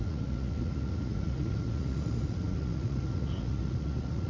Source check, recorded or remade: remade